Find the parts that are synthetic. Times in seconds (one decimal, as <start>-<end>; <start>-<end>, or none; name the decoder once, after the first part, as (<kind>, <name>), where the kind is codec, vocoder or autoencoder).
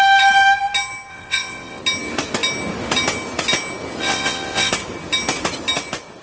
1.1-1.8 (vocoder, WaveNeXt); 4.0-4.7